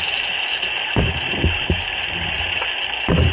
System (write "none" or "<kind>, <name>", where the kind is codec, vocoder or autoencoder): none